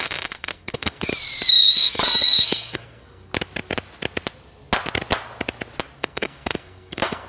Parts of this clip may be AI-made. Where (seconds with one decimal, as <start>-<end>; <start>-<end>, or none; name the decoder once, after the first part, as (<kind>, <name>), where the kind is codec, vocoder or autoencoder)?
0.0-1.1 (codec, SNAC); 1.6-3.3; 6.0-7.3